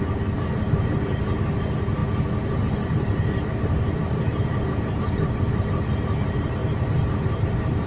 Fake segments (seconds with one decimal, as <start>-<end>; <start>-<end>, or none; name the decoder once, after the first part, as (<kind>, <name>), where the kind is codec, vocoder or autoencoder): 0.0-2.0 (vocoder, BigVGAN v2); 2.6-7.9